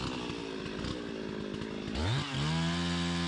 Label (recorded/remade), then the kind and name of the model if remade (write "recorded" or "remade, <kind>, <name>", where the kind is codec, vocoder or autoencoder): recorded